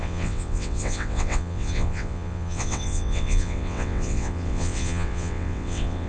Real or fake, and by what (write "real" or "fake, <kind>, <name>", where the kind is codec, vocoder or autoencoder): fake, vocoder, WaveNeXt